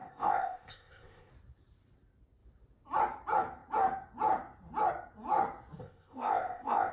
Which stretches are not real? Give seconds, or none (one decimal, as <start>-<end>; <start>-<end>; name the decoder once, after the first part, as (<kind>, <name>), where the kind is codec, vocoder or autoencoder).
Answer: 0.0-1.3 (codec, ZipCodec); 5.8-6.9